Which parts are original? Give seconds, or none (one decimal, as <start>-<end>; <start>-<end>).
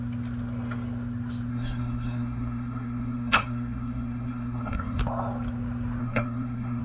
0.0-1.5; 5.0-6.0